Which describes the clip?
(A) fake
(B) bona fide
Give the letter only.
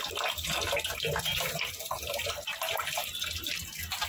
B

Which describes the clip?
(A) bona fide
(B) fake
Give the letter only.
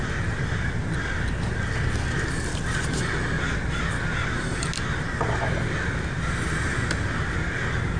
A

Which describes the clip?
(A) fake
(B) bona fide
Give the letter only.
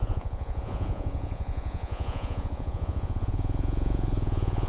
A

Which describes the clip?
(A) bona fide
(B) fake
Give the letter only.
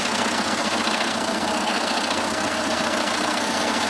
B